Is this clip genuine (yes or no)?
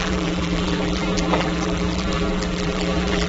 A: no